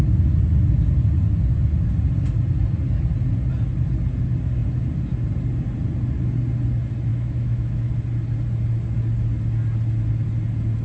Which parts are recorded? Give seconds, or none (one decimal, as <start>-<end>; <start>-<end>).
0.0-7.1; 7.9-10.8